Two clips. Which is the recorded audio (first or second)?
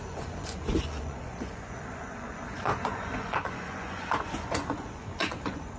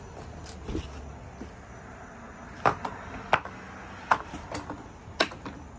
second